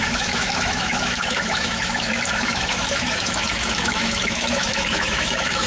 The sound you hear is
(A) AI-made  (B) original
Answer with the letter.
A